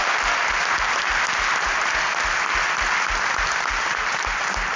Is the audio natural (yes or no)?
yes